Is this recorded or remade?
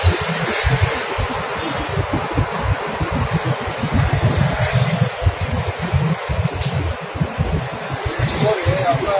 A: recorded